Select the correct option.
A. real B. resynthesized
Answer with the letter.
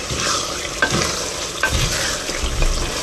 A